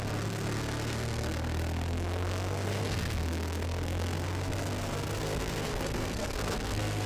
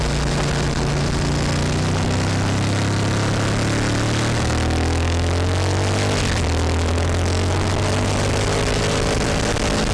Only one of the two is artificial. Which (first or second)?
first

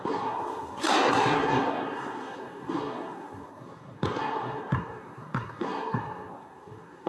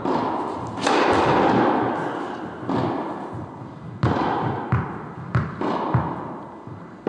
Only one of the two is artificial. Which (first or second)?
first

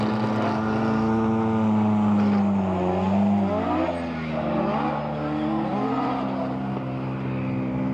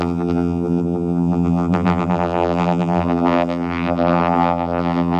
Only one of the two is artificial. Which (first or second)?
second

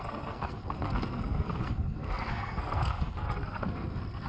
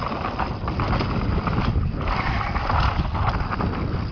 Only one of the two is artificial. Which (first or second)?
first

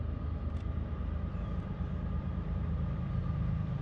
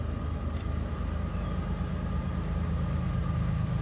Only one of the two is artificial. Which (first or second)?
first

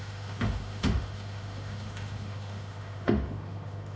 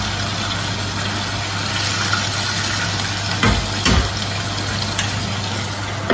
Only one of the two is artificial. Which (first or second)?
first